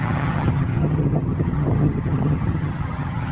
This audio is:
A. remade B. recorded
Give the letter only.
A